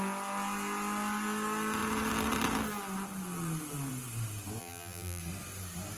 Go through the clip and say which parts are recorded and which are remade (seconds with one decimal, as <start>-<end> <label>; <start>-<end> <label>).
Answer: 0.0-4.6 recorded; 4.6-5.2 remade; 5.2-6.0 recorded